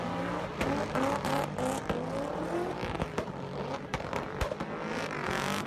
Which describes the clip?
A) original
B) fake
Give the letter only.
A